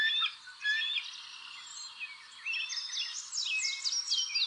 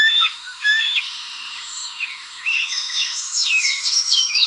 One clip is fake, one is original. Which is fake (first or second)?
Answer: second